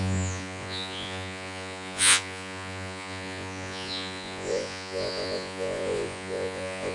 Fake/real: fake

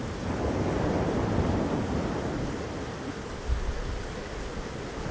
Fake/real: real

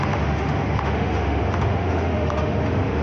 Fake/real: fake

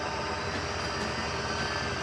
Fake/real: real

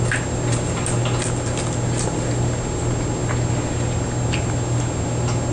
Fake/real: real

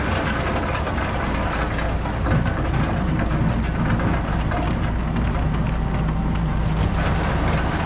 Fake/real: real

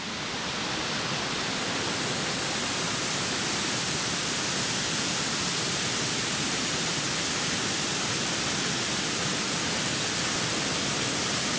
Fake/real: real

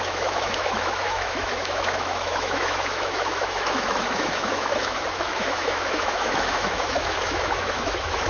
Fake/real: fake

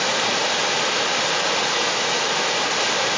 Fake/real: real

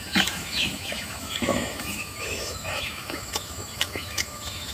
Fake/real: fake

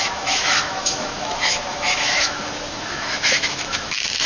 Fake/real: fake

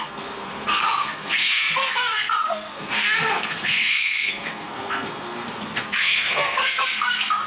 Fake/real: fake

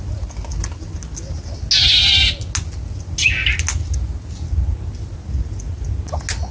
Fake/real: real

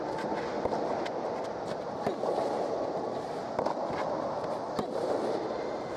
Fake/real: real